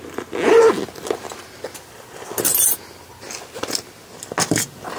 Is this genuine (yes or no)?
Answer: yes